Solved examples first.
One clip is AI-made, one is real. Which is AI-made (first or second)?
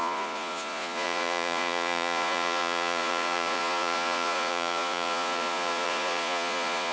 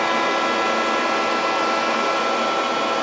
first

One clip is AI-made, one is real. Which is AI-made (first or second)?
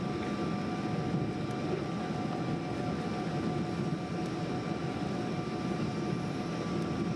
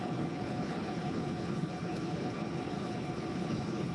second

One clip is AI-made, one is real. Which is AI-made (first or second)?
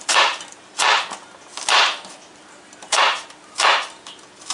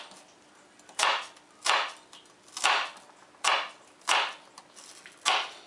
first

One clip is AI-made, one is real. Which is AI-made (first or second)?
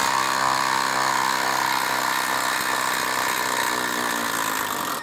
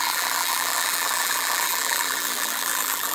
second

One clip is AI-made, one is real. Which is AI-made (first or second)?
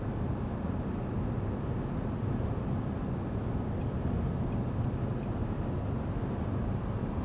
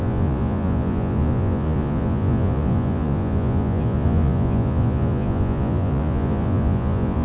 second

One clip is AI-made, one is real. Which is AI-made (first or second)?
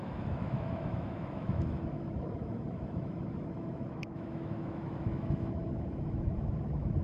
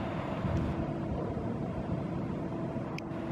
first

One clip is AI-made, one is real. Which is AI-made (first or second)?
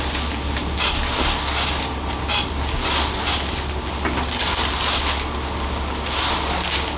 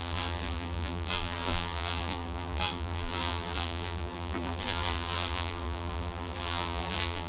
second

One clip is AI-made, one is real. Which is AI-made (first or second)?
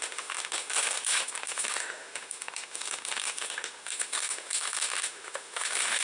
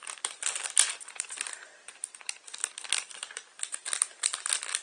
first